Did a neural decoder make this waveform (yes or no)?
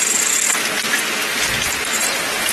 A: no